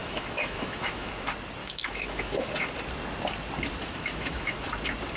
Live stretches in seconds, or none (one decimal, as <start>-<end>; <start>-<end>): 1.1-1.6; 2.7-3.8; 4.7-5.2